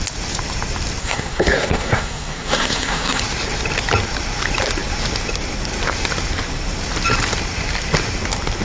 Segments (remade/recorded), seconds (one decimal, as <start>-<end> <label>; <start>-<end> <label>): 0.0-1.0 recorded; 1.0-3.2 remade; 3.2-8.6 recorded